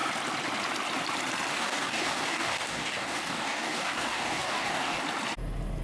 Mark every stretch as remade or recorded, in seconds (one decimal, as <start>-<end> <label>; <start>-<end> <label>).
0.0-1.5 recorded; 1.5-5.0 remade; 5.0-5.8 recorded